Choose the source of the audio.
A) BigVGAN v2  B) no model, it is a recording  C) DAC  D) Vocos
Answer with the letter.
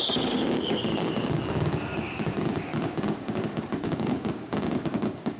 C